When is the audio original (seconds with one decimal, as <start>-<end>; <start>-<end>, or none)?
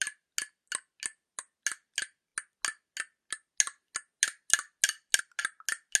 0.0-6.0